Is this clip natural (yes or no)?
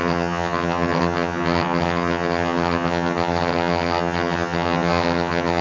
no